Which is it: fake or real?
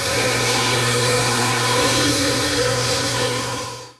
fake